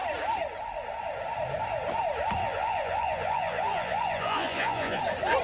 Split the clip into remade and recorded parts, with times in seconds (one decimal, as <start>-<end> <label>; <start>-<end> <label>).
0.0-2.4 recorded; 2.4-5.0 remade; 5.0-5.4 recorded

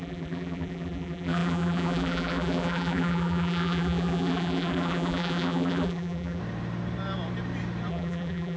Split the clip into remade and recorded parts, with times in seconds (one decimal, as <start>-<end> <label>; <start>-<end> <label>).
0.0-6.4 remade; 6.4-7.9 recorded; 7.9-8.6 remade

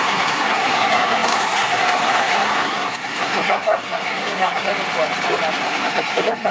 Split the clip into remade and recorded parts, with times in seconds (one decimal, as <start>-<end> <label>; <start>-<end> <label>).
0.0-4.7 remade; 4.7-5.6 recorded; 5.6-6.5 remade